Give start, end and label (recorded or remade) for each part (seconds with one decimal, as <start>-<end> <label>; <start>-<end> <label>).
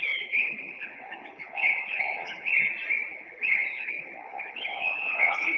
0.0-2.5 remade; 2.5-3.1 recorded; 3.1-5.6 remade